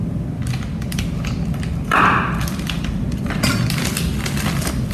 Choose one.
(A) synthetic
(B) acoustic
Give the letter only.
B